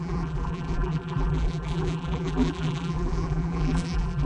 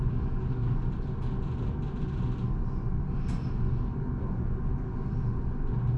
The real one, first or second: second